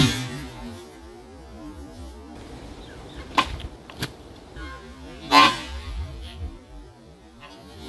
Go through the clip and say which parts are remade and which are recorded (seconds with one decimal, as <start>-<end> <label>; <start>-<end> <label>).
0.0-5.7 recorded; 5.7-7.5 remade; 7.5-7.9 recorded